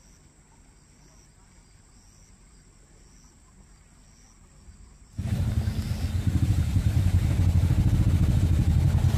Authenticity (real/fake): real